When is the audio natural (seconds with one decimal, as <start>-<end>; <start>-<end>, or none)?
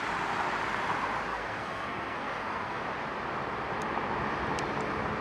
0.0-1.3; 2.8-5.2